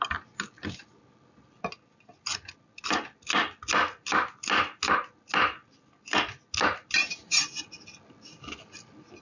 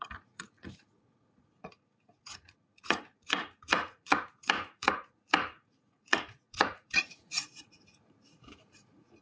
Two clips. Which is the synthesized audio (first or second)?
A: second